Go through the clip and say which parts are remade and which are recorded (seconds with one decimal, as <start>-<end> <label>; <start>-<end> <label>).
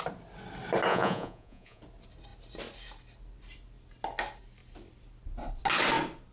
0.0-0.9 recorded; 0.9-1.8 remade; 1.8-6.3 recorded